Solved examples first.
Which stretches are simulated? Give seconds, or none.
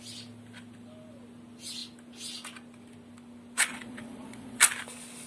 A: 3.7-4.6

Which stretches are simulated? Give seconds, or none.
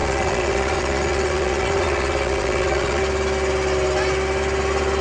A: 0.0-3.0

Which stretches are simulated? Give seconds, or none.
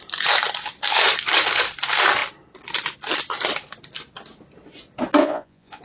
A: 5.2-5.8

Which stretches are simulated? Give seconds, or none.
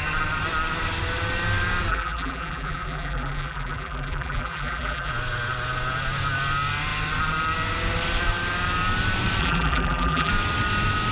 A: 1.9-5.1; 9.4-10.3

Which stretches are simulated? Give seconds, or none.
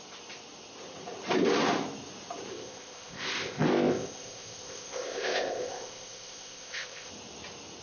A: 2.5-7.1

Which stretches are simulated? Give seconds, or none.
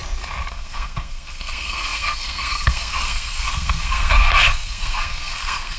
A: 0.5-5.8